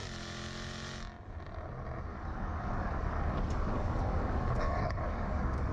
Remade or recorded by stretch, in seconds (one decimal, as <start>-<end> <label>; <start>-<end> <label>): 0.0-2.1 recorded; 2.1-5.7 remade